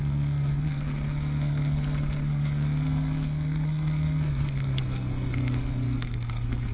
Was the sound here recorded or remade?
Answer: remade